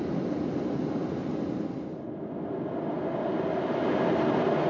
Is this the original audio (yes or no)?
yes